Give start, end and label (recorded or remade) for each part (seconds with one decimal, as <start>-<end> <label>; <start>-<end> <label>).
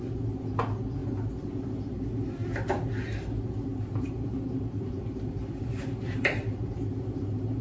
0.0-3.7 recorded; 3.7-7.6 remade